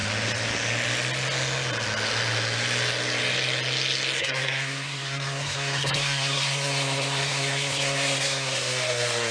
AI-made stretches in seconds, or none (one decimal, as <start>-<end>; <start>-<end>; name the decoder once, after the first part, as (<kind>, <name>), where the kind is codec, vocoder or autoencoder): 4.2-9.3 (codec, SNAC)